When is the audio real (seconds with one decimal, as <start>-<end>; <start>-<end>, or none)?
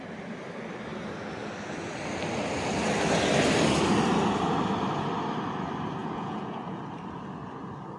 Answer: 0.0-6.0; 6.8-8.0